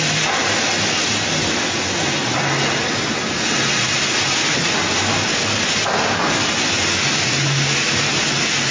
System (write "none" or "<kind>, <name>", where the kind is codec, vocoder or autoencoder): none